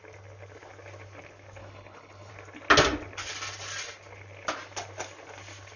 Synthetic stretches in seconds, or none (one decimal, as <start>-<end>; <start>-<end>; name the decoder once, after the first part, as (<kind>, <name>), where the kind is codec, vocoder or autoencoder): 1.6-2.3 (codec, HILCodec)